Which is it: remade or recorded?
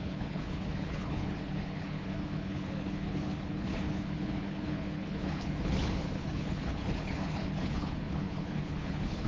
remade